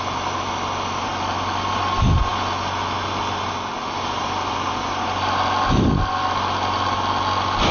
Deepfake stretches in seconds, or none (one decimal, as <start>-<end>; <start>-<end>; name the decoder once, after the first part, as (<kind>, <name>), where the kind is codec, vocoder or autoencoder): none